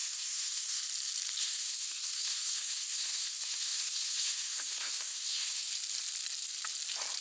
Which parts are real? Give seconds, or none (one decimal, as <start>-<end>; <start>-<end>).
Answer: 0.8-1.4; 5.7-7.2